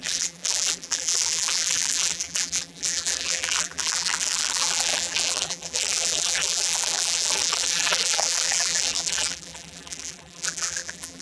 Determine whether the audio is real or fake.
fake